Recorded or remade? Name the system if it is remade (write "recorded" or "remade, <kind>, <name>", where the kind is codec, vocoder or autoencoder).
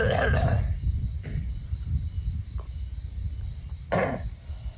recorded